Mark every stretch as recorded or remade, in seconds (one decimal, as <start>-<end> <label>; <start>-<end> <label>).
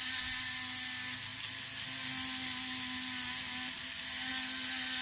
0.0-5.0 recorded